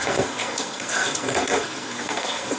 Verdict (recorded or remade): remade